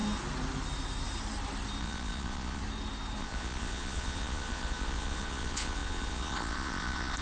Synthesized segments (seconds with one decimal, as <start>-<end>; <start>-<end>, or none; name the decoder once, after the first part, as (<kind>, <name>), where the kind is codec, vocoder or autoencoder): 1.8-2.6 (vocoder, Vocos); 3.2-7.2